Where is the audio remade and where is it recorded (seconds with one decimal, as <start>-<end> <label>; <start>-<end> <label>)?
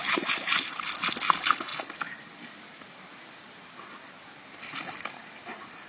0.0-5.9 recorded